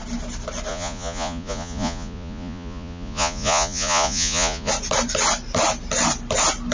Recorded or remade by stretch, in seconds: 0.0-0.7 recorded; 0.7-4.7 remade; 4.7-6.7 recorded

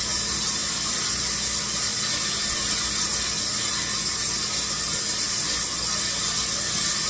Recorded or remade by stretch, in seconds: 0.0-7.1 recorded

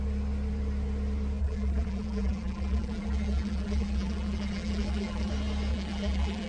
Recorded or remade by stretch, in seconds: 0.0-1.4 recorded; 1.4-5.3 remade; 5.3-5.7 recorded; 5.7-6.5 remade

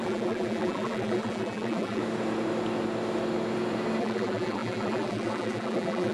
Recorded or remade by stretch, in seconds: 0.0-2.0 remade; 2.0-4.0 recorded; 4.0-6.1 remade